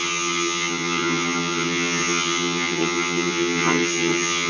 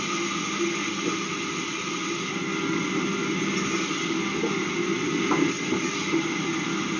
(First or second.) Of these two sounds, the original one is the second